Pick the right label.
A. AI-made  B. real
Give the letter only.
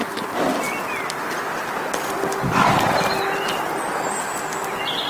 B